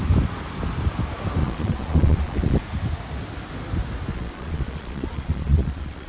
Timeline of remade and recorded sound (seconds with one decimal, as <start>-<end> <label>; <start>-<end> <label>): 0.0-1.4 recorded; 1.4-2.6 remade; 2.6-4.1 recorded; 4.1-6.1 remade